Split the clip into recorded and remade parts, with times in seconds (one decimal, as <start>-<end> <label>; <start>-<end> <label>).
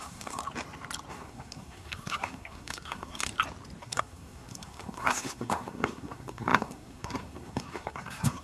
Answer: 0.0-0.4 remade; 0.4-1.1 recorded; 1.1-3.3 remade; 3.3-3.8 recorded; 3.8-8.4 remade